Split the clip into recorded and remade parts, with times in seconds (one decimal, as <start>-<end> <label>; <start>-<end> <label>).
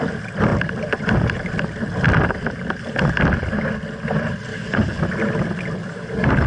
0.0-4.5 recorded; 4.5-5.0 remade; 5.0-5.8 recorded; 5.8-6.5 remade